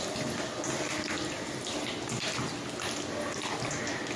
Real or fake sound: real